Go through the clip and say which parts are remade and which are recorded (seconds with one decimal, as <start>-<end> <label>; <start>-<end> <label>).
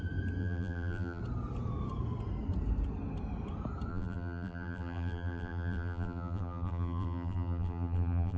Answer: 0.0-0.4 recorded; 0.4-1.2 remade; 1.2-3.9 recorded; 3.9-8.4 remade